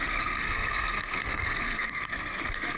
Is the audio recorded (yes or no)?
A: no